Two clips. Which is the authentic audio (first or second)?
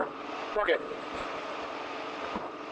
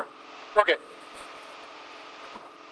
second